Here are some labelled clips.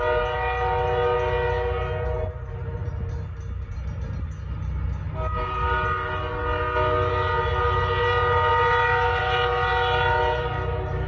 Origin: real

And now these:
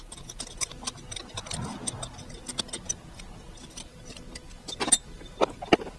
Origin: real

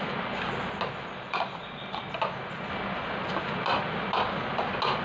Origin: real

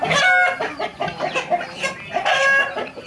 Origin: real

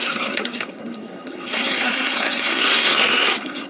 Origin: fake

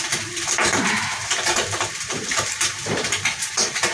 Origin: fake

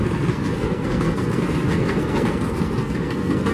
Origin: fake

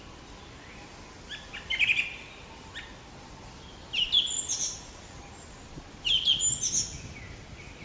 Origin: real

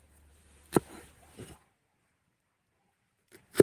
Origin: fake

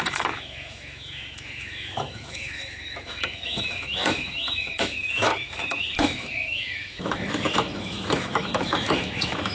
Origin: fake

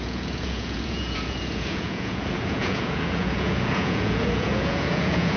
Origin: fake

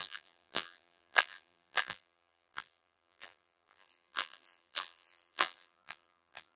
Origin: fake